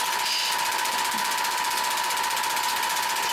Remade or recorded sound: recorded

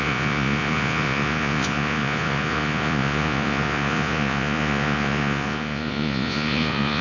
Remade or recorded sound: remade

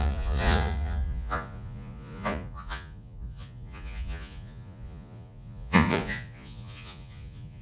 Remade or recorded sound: remade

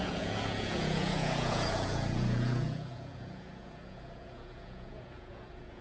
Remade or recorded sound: remade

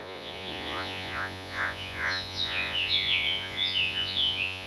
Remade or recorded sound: remade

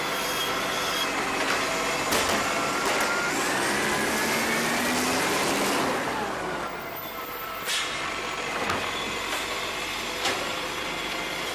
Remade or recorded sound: recorded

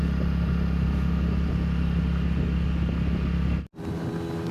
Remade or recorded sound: recorded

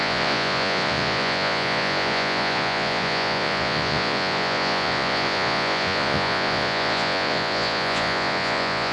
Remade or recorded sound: remade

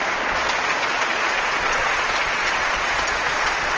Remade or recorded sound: remade